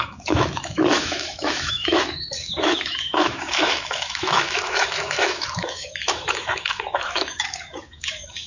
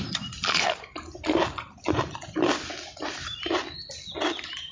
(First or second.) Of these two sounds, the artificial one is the first